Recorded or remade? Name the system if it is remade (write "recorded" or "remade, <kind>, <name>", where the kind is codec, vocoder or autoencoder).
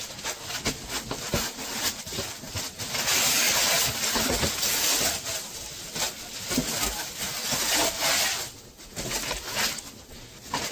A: recorded